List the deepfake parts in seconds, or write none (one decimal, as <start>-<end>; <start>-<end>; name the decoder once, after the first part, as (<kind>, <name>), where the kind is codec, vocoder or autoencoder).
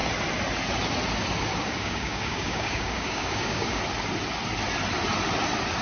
1.5-3.8 (codec, DAC)